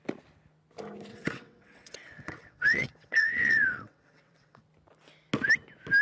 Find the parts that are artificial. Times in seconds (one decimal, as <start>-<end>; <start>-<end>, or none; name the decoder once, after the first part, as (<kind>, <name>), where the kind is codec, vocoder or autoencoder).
1.1-4.6 (vocoder, WaveNeXt)